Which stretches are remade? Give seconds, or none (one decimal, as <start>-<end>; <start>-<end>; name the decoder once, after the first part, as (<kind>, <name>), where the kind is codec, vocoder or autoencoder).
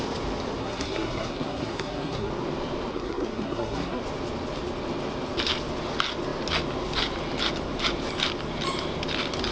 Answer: 0.6-2.3 (codec, SNAC); 2.9-4.0